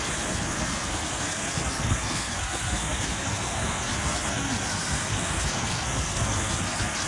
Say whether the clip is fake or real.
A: fake